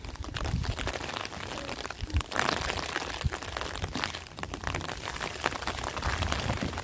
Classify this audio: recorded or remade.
recorded